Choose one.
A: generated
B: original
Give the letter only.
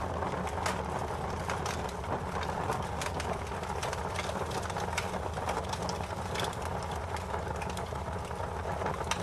B